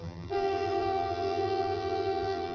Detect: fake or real fake